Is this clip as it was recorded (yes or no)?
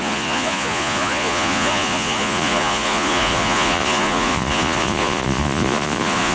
no